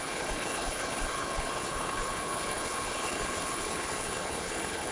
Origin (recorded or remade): remade